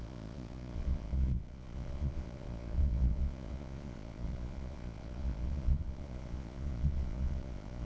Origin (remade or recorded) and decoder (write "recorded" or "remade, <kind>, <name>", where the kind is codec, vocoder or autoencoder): remade, vocoder, Vocos